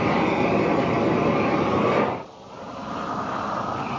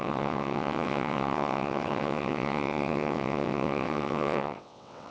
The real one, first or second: first